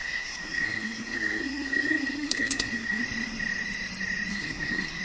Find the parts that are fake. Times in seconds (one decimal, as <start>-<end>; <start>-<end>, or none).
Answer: 0.0-3.0; 4.3-5.0